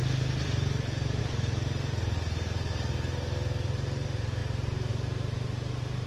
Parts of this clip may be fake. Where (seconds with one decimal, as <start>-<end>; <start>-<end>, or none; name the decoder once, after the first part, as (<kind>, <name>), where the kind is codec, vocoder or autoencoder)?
none